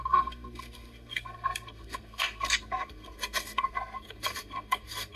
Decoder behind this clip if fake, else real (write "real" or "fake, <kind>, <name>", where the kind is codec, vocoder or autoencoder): fake, codec, SNAC